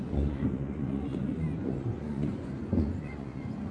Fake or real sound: fake